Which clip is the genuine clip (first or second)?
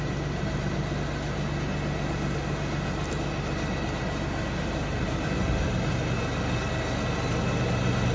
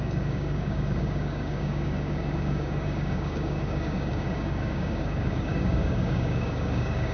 first